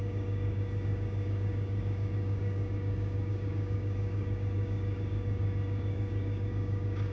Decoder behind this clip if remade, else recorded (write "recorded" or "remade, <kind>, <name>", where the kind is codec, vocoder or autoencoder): remade, codec, DAC